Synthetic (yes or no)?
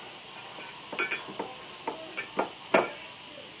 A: no